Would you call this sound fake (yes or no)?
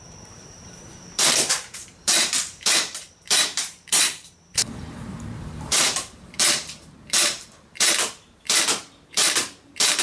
yes